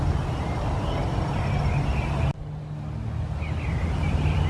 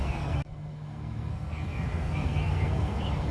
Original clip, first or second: first